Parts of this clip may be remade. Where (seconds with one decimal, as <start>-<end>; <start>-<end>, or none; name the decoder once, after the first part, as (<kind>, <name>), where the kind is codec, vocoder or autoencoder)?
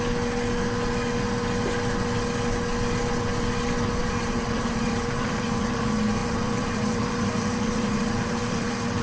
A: 4.0-5.8 (vocoder, BigVGAN v2); 6.2-9.0